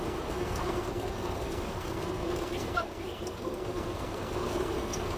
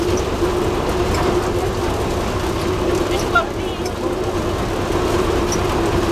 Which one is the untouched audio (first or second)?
second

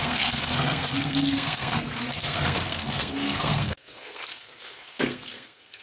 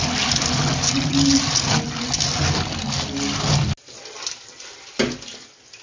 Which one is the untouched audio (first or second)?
second